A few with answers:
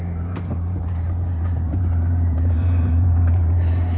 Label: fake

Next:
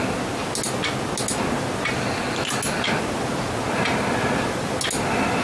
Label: real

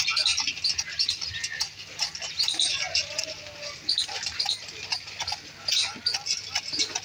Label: real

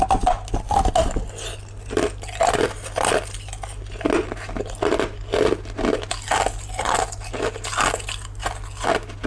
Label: real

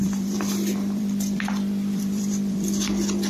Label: fake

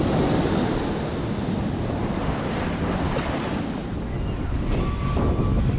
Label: real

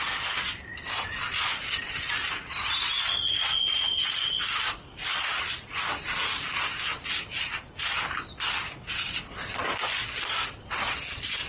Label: real